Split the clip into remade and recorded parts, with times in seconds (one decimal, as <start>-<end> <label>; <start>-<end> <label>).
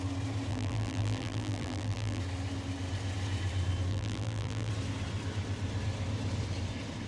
0.0-0.5 recorded; 0.5-2.2 remade; 2.2-3.9 recorded; 3.9-4.7 remade; 4.7-7.1 recorded